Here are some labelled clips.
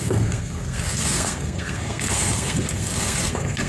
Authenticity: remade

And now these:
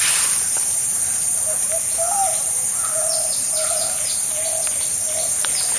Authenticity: remade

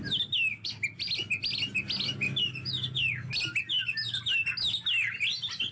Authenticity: recorded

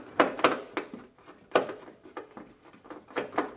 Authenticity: recorded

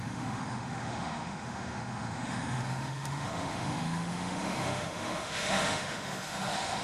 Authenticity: remade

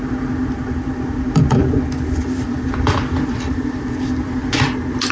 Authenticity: remade